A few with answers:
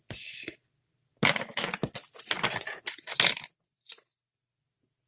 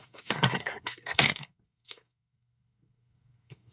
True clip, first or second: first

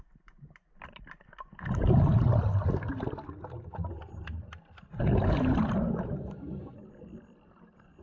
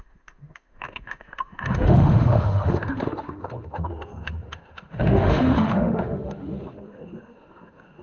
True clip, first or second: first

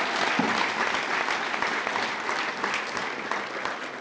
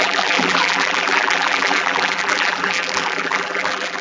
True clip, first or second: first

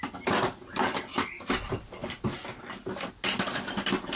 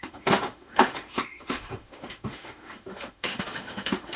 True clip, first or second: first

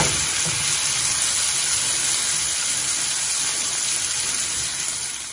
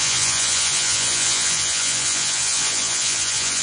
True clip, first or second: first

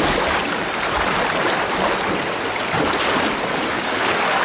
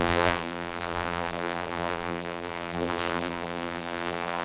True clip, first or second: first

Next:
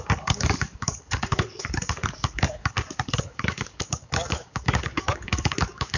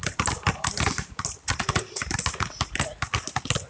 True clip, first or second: second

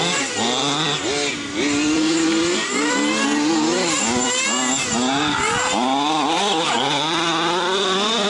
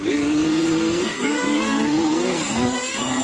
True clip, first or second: first